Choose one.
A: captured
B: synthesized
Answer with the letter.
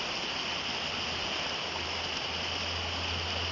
A